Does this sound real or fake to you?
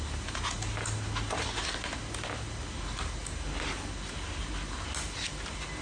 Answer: real